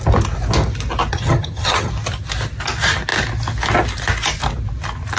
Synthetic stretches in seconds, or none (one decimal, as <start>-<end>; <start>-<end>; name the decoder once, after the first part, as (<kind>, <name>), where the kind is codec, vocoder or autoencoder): 1.1-1.9 (vocoder, HiFi-GAN)